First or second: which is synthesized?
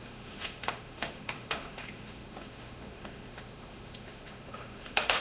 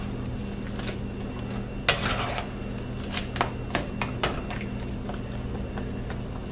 first